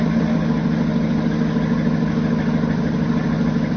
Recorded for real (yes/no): yes